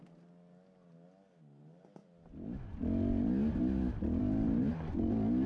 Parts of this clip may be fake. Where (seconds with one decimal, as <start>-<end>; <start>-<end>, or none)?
none